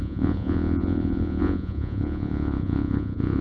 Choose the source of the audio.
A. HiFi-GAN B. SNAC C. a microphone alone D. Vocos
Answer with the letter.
D